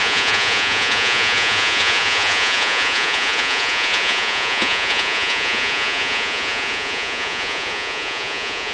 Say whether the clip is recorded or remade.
remade